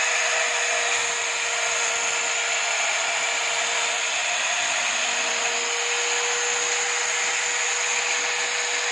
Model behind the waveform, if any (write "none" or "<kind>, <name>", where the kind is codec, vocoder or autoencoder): none